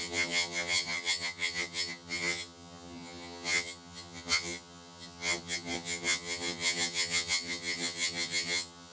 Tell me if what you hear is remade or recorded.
remade